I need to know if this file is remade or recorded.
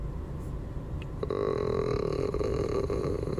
remade